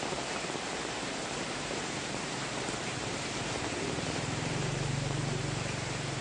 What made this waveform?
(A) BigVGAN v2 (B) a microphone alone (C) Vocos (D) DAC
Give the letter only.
A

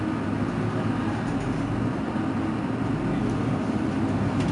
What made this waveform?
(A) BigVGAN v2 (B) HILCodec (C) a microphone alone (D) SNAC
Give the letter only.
C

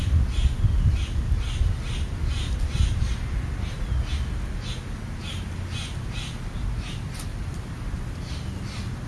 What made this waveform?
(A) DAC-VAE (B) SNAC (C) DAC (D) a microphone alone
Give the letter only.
D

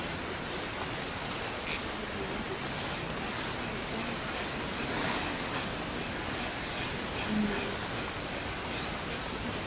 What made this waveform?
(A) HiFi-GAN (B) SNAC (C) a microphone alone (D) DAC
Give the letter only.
C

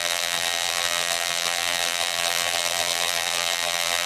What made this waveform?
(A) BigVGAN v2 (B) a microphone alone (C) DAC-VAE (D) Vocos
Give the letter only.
A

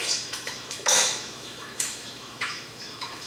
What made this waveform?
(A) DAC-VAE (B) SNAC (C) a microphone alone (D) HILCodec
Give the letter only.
A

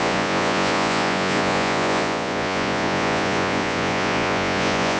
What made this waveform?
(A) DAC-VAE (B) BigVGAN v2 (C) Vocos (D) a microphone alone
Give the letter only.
C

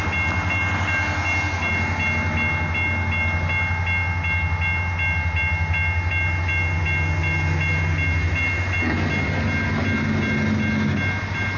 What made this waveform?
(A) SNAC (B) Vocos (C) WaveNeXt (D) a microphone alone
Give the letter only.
D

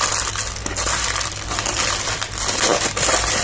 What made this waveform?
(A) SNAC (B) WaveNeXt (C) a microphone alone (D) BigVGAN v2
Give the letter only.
C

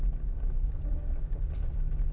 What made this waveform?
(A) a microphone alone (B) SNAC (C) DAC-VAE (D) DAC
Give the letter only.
A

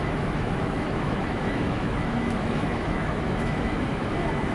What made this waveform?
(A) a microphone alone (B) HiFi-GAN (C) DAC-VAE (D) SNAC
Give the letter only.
C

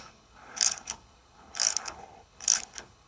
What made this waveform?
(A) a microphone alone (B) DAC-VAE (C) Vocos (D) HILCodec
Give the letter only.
D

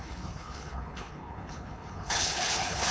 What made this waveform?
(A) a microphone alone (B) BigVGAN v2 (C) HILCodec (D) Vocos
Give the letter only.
C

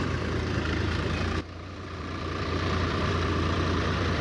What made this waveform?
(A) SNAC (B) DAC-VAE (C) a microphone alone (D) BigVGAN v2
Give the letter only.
D